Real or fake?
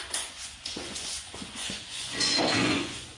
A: fake